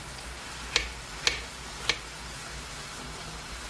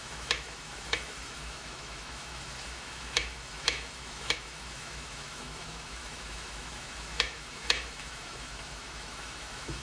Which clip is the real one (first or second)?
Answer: first